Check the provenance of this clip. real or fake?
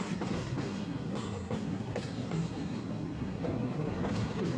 fake